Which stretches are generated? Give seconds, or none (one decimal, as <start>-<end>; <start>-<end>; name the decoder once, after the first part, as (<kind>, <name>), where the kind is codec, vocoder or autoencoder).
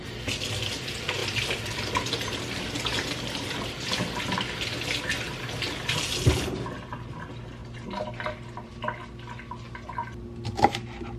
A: none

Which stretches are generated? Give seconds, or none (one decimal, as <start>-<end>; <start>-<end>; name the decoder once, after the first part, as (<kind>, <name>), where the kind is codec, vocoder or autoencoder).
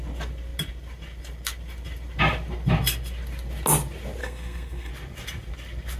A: 4.2-4.9 (codec, SNAC)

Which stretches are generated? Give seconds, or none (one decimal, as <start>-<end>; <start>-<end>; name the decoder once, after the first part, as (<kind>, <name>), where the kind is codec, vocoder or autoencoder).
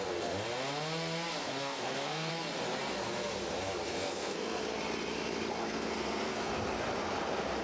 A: 1.4-2.3 (codec, SNAC); 3.9-4.6; 5.6-6.5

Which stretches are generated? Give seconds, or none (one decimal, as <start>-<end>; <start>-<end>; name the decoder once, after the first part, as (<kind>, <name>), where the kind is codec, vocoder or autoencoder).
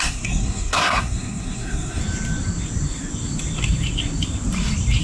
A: 0.0-2.0 (codec, SNAC)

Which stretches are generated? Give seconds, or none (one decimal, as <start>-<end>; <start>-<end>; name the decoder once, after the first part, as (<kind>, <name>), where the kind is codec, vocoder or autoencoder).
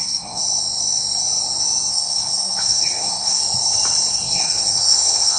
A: 0.0-0.4 (codec, SNAC); 1.9-3.4; 4.1-5.4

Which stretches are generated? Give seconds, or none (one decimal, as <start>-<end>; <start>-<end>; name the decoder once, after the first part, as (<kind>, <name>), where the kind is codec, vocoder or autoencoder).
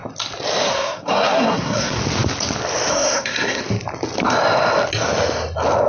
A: 0.7-2.0 (codec, SNAC); 2.9-3.6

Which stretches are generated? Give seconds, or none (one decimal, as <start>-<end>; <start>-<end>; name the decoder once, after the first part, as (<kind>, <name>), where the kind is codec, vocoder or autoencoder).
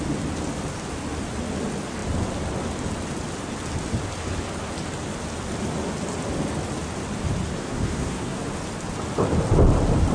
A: 7.6-8.4 (codec, SNAC)